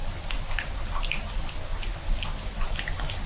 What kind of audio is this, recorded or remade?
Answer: recorded